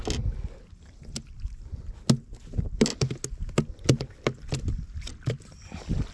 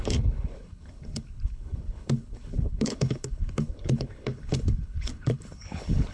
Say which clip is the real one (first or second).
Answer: first